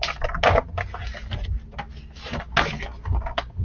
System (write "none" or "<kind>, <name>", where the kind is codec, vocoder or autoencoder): none